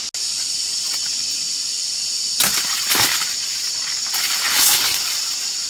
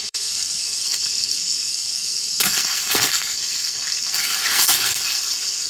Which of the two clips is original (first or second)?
first